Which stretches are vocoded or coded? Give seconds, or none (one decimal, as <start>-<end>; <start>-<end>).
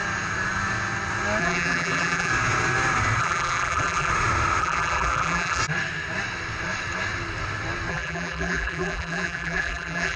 1.4-2.3; 3.2-4.1; 4.6-5.6; 7.9-10.2